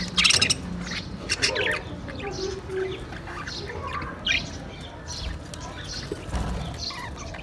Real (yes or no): yes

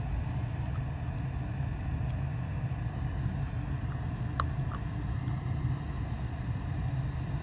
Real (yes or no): yes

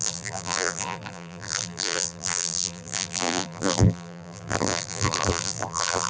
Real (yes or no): no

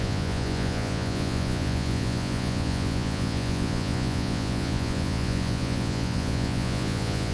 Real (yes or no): no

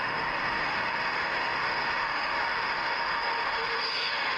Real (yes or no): no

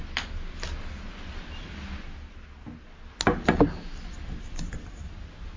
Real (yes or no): yes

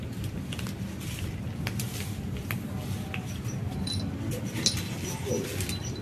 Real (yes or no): yes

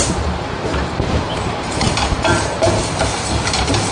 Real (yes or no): no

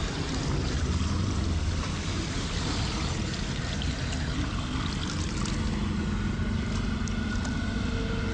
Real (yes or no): yes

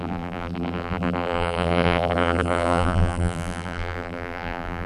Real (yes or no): no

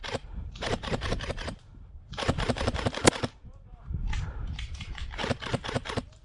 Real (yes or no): no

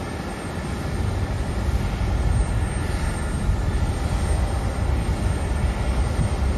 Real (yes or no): yes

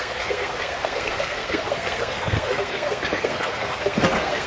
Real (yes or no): no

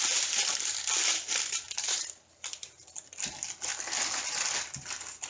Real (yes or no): yes